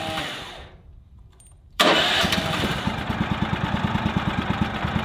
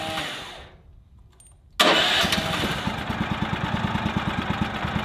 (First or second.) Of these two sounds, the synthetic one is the first